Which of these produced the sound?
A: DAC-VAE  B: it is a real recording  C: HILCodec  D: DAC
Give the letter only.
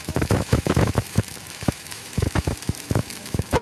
A